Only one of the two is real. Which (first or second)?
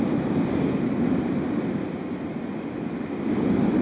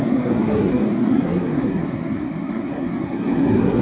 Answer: first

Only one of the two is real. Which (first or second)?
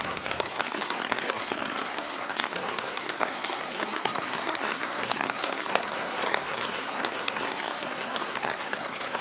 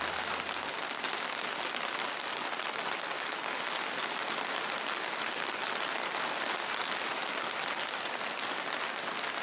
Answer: second